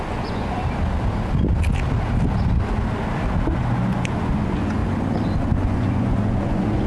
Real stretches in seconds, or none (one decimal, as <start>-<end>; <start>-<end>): 0.6-3.4; 4.8-5.4